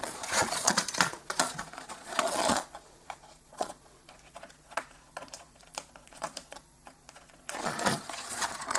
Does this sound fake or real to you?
fake